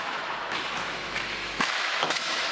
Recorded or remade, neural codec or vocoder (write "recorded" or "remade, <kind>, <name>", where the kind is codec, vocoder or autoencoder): remade, autoencoder, DAC-VAE